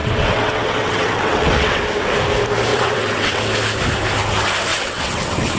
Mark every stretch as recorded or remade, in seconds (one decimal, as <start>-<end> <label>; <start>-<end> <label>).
0.0-1.8 remade; 1.8-2.7 recorded; 2.7-3.4 remade; 3.4-4.7 recorded; 4.7-5.6 remade

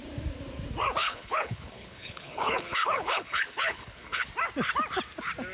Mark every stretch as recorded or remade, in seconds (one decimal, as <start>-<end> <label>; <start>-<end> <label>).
0.0-1.0 recorded; 1.0-4.3 remade; 4.3-5.5 recorded

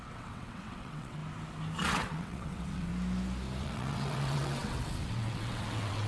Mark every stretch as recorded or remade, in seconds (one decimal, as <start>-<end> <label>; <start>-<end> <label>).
0.0-1.2 remade; 1.2-1.9 recorded; 1.9-2.9 remade; 2.9-3.6 recorded; 3.6-6.1 remade

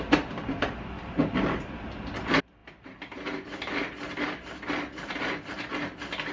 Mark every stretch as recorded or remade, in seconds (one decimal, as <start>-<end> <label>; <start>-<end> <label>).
0.0-6.3 recorded

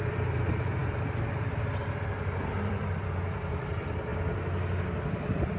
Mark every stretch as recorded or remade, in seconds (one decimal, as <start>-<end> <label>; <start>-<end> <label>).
0.0-4.1 remade; 4.1-4.8 recorded; 4.8-5.6 remade

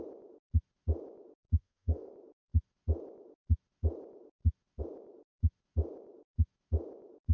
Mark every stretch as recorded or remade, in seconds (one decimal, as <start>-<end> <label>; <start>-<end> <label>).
0.0-1.6 recorded; 1.6-2.1 remade; 2.1-7.3 recorded